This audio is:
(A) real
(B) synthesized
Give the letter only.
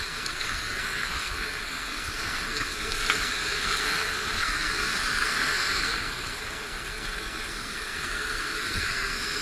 B